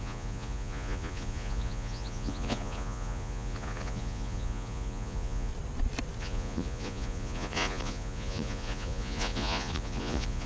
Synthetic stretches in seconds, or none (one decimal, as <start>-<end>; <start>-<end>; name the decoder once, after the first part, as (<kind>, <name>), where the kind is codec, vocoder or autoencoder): 0.0-5.5 (vocoder, Vocos); 6.2-10.5